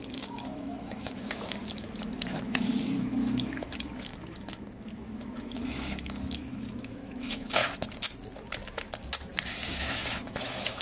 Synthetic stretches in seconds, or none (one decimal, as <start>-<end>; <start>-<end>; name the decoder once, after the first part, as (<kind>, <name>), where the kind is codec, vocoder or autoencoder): 0.0-7.6 (autoencoder, DAC-VAE); 9.8-10.8